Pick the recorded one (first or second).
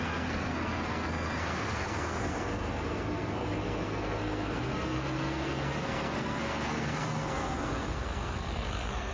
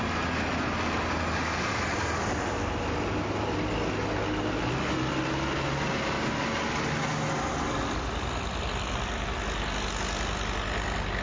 second